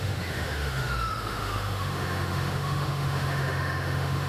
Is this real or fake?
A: fake